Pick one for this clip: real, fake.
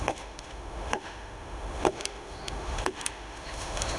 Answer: fake